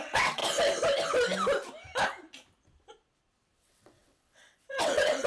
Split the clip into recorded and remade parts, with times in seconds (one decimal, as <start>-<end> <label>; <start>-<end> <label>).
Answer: 0.0-0.4 remade; 0.4-3.6 recorded; 3.6-5.3 remade